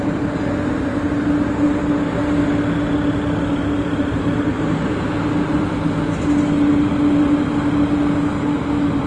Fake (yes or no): no